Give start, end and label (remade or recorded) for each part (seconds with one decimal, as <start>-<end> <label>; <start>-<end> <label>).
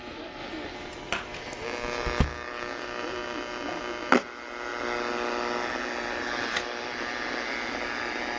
0.0-0.4 remade; 0.4-2.2 recorded; 2.2-3.2 remade; 3.2-4.2 recorded; 4.2-4.7 remade; 4.7-6.0 recorded; 6.0-8.4 remade